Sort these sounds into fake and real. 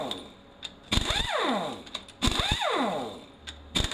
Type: real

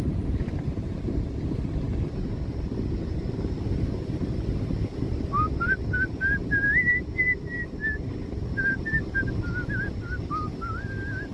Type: real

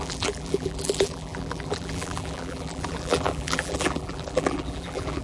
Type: fake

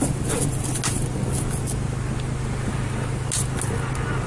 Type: real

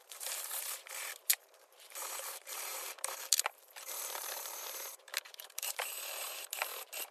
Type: fake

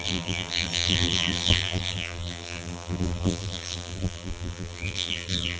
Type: fake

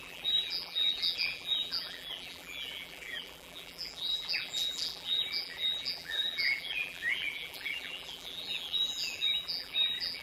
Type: fake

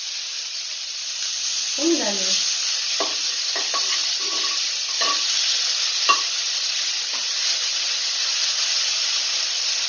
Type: real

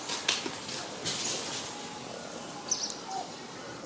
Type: real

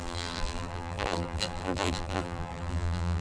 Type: fake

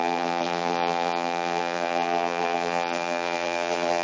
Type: fake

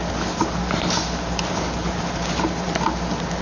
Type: real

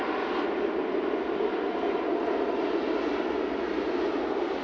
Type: real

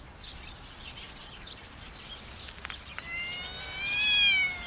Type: real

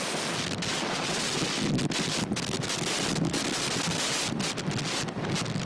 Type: real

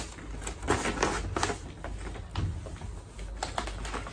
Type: real